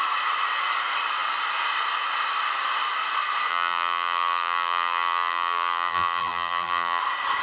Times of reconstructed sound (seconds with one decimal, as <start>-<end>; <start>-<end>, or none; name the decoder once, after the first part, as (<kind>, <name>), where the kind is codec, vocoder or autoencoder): 3.5-7.0 (vocoder, BigVGAN v2)